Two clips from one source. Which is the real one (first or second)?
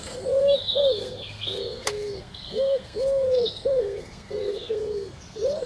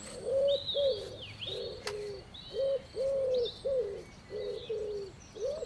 second